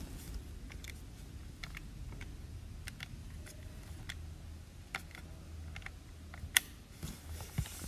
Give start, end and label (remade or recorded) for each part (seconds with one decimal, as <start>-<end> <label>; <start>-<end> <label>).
0.0-3.2 recorded; 3.2-4.0 remade; 4.0-7.9 recorded